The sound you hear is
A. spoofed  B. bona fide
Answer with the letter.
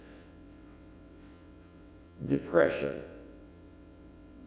A